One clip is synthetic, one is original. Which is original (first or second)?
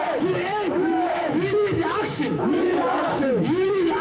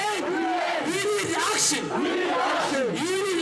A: second